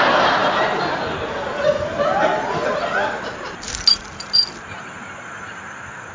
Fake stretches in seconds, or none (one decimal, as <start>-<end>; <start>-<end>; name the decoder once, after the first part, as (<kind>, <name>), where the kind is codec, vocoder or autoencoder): none